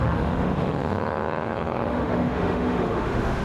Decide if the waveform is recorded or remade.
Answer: remade